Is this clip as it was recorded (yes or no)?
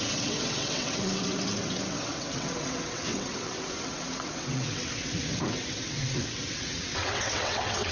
no